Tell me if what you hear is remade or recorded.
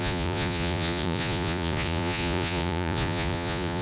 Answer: remade